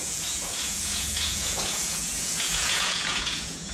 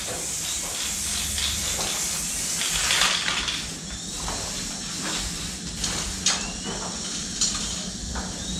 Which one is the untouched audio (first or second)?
second